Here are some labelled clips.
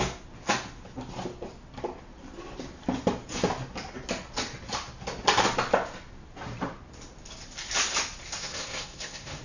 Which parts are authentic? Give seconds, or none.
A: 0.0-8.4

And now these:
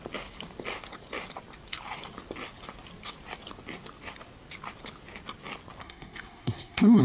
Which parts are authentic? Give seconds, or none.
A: 0.0-5.8

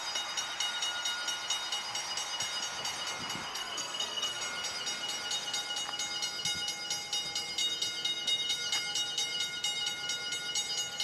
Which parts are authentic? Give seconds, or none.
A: 0.0-3.5; 4.4-11.0

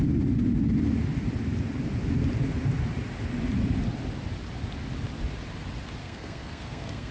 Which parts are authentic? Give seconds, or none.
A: 0.0-6.0

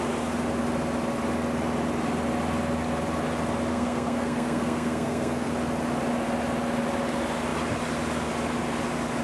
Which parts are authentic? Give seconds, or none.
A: 0.0-3.7; 5.5-9.2